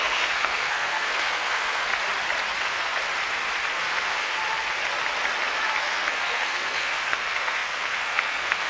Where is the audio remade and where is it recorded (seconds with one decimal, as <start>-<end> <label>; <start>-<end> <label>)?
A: 0.0-1.9 remade; 1.9-2.6 recorded; 2.6-3.0 remade; 3.0-3.7 recorded; 3.7-4.4 remade; 4.4-5.8 recorded; 5.8-8.7 remade

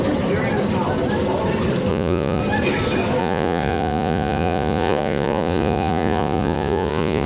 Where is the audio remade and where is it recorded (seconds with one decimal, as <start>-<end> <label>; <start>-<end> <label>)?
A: 0.0-1.9 recorded; 1.9-2.4 remade; 2.4-3.2 recorded; 3.2-7.3 remade

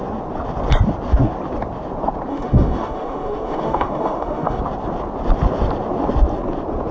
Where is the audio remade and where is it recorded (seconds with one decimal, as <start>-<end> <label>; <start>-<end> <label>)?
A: 0.0-2.3 recorded; 2.3-4.6 remade; 4.6-6.9 recorded

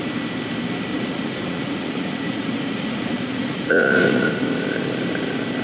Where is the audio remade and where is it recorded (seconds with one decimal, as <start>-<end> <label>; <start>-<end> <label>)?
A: 0.0-0.9 recorded; 0.9-4.3 remade; 4.3-5.6 recorded